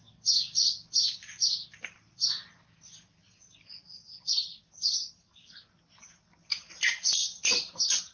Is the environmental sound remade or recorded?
recorded